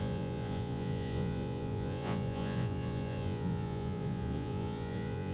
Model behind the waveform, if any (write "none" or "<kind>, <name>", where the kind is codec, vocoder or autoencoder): vocoder, Vocos